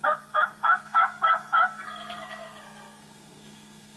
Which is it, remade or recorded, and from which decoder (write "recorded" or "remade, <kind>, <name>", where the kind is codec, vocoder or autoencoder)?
remade, codec, SNAC